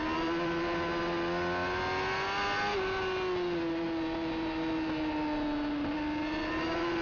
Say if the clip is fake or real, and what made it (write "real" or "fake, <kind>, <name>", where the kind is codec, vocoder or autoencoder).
real